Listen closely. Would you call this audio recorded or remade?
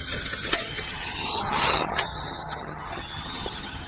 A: remade